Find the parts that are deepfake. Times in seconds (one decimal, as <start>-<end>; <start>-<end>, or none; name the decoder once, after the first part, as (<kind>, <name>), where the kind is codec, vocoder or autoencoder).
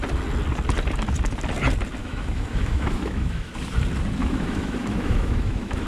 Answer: 2.0-3.5 (autoencoder, DAC-VAE); 4.2-5.9